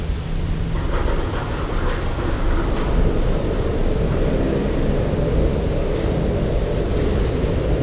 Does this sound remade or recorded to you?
remade